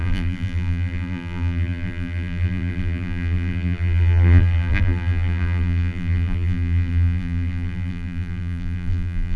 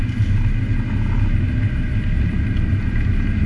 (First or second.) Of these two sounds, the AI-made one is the first